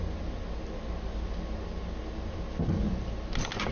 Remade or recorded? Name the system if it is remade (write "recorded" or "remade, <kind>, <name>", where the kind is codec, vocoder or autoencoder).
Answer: recorded